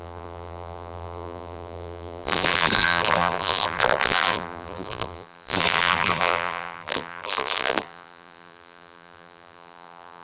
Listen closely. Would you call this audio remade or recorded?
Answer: remade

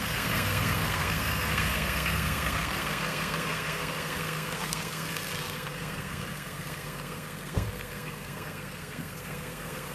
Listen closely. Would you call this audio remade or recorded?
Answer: remade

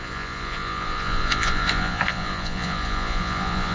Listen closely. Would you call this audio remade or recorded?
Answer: remade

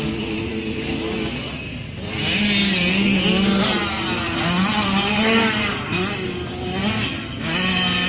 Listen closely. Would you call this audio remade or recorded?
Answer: recorded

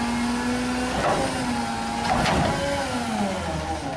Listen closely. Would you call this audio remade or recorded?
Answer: recorded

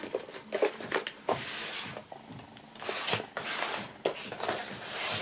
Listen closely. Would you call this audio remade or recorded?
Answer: recorded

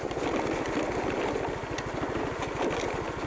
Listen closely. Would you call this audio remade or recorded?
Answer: recorded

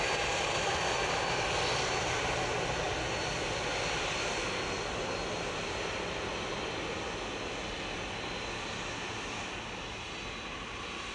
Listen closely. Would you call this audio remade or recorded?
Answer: recorded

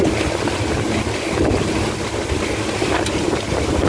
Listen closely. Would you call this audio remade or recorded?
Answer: recorded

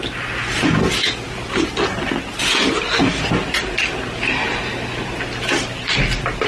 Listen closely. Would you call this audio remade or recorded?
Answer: recorded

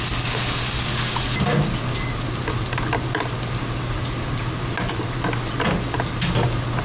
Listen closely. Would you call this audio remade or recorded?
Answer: recorded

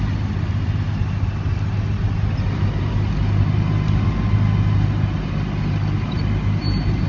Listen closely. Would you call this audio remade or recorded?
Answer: recorded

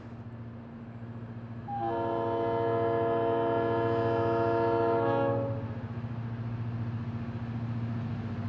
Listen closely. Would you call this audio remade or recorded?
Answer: recorded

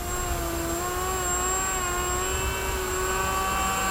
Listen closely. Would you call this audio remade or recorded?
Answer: recorded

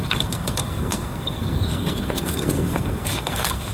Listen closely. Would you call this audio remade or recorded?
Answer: remade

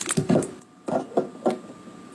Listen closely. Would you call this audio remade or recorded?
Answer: recorded